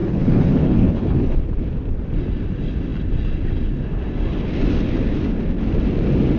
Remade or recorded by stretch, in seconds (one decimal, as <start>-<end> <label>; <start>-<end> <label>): 0.0-1.4 remade; 1.4-6.4 recorded